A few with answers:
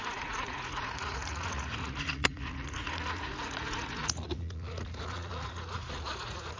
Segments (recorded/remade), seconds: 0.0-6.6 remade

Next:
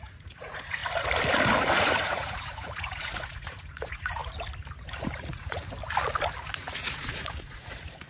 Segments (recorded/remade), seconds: 0.0-0.8 remade; 0.8-1.6 recorded; 1.6-4.2 remade; 4.2-5.0 recorded; 5.0-5.6 remade; 5.6-6.9 recorded; 6.9-8.1 remade

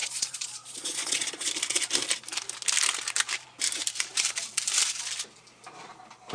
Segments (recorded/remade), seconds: 0.0-1.5 remade; 1.5-6.3 recorded

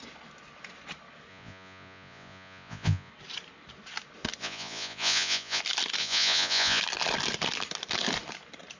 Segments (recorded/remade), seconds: 0.0-1.3 recorded; 1.3-3.1 remade; 3.1-4.4 recorded; 4.4-5.6 remade; 5.6-6.0 recorded; 6.0-6.8 remade; 6.8-8.8 recorded